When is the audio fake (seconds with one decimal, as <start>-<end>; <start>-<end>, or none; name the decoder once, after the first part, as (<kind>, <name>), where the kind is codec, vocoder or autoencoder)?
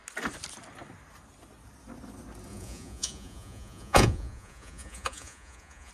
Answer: 2.5-5.9 (vocoder, Vocos)